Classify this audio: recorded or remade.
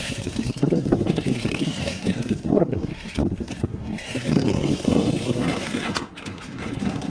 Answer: remade